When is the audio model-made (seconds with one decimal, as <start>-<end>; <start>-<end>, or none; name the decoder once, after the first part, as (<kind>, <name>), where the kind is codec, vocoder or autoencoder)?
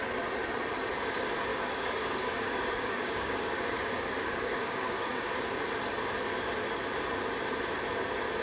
1.5-5.4 (codec, DAC)